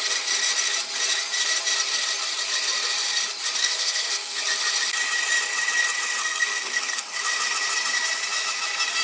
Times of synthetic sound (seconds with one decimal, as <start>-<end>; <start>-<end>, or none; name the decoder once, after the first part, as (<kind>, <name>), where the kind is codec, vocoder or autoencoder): 3.6-4.4 (codec, SNAC); 6.2-7.0